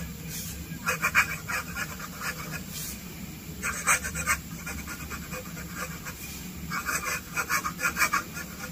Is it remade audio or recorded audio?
remade